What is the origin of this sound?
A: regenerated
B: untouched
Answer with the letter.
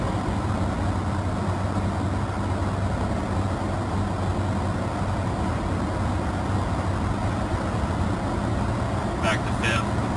B